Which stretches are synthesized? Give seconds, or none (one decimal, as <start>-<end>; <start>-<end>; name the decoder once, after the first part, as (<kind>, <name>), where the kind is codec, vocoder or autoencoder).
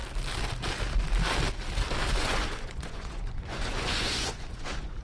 2.1-5.0 (vocoder, Vocos)